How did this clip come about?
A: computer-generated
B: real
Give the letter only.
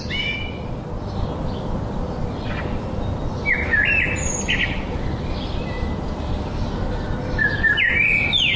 B